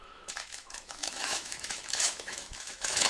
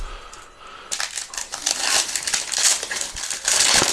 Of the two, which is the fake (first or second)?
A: first